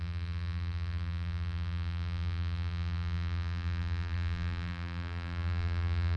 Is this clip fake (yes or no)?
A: yes